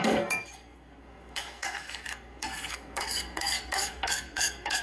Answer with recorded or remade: remade